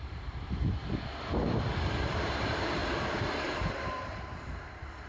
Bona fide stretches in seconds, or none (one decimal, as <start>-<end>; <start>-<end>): 0.8-2.1